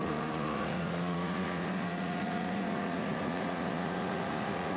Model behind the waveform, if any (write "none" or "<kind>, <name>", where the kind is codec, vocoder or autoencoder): vocoder, Vocos